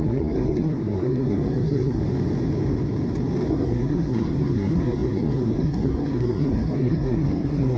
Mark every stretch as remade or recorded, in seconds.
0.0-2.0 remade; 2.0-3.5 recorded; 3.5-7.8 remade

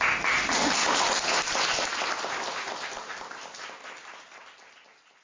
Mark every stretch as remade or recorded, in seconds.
0.0-5.2 recorded

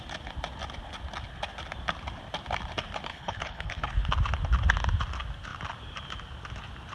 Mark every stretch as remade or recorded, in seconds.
0.0-3.1 recorded; 3.1-4.1 remade; 4.1-6.9 recorded

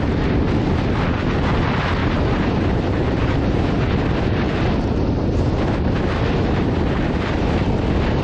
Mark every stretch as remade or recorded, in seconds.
0.0-2.0 recorded; 2.0-5.5 remade; 5.5-8.2 recorded

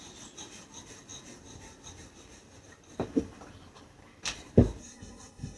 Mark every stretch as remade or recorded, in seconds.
0.0-4.8 recorded; 4.8-5.6 remade